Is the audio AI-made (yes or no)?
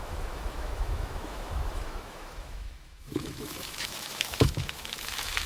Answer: yes